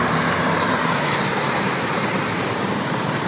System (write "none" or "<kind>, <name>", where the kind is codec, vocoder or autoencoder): vocoder, BigVGAN v2